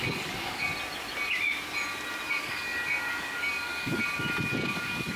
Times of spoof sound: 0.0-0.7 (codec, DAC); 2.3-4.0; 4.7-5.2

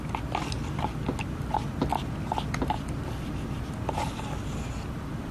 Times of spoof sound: none

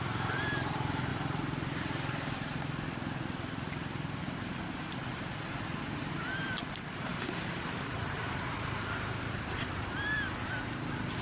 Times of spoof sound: none

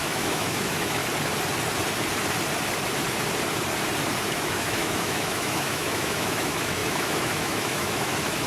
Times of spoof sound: 0.0-1.0 (autoencoder, DAC-VAE); 4.3-8.5